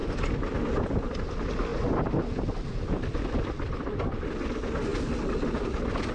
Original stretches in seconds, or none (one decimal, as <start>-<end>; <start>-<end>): 0.0-6.1